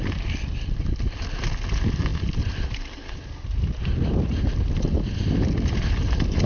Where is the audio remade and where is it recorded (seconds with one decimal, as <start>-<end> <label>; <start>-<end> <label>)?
0.0-6.5 recorded